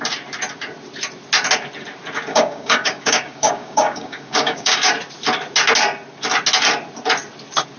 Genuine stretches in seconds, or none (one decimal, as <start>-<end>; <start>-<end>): 0.0-2.3; 4.9-7.8